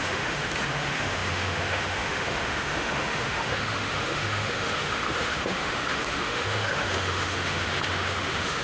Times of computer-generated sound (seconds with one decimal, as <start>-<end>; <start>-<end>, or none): 0.0-8.6